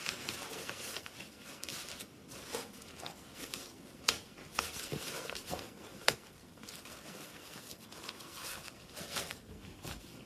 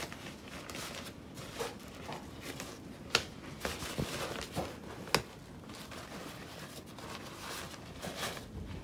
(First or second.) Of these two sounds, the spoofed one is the first